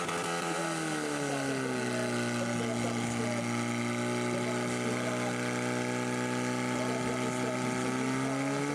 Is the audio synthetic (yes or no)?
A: no